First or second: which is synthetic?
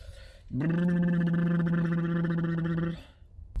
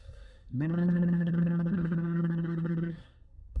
second